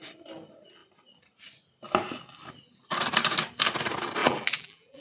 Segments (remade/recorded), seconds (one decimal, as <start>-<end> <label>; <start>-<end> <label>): 0.0-4.2 recorded; 4.2-5.0 remade